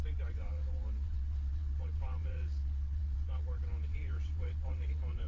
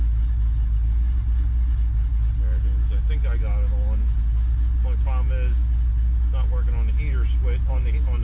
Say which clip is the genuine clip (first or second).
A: second